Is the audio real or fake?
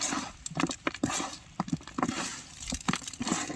real